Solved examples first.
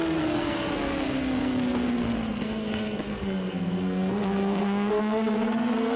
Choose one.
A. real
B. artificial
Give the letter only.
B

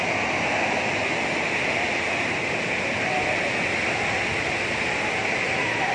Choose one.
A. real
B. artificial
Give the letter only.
A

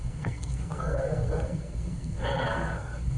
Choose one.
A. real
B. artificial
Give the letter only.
B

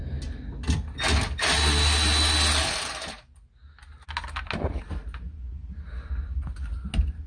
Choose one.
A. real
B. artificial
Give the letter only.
A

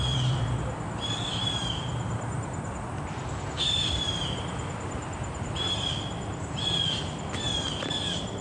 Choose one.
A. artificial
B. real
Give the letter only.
A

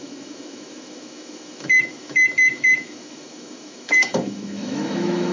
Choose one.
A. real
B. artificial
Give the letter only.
B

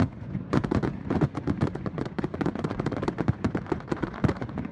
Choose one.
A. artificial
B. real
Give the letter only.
A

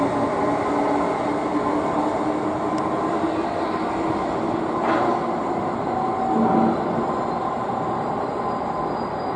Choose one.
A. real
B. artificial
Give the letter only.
A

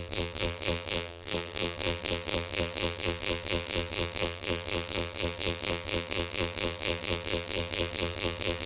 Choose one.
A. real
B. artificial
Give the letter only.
B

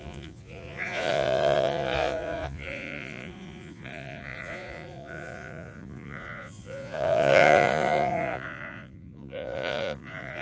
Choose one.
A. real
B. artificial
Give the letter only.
B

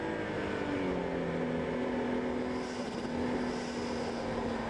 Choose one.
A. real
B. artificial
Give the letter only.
A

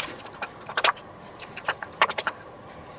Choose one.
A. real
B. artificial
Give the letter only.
B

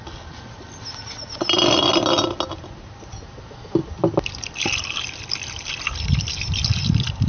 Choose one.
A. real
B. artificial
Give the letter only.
A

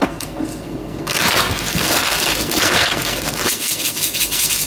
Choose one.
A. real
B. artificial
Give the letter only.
B